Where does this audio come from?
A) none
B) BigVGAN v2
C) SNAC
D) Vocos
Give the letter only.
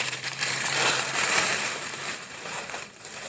B